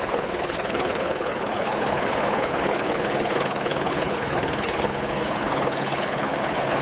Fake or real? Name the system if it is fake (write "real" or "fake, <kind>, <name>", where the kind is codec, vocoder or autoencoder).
fake, codec, HILCodec